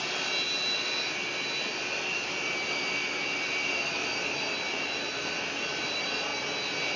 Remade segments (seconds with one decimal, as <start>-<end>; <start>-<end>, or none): 0.0-6.3